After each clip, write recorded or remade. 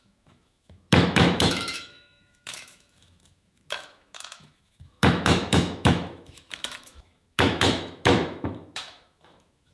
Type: remade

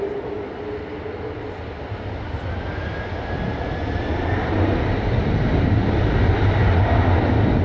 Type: recorded